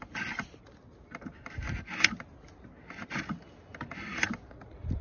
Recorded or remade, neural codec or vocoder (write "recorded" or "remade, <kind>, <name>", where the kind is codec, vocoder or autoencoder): recorded